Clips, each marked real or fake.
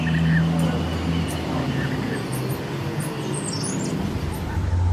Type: real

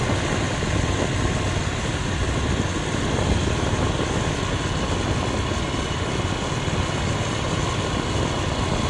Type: real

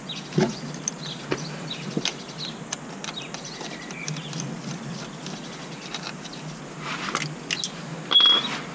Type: real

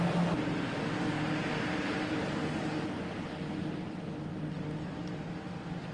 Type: real